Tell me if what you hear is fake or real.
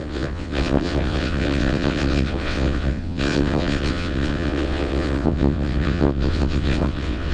fake